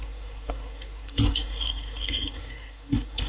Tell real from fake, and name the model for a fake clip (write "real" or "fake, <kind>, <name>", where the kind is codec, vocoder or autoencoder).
fake, codec, SNAC